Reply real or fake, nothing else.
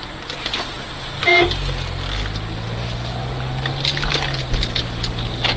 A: real